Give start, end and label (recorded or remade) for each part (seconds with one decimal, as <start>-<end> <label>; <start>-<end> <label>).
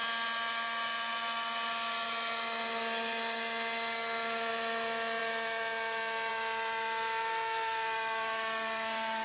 0.0-9.2 recorded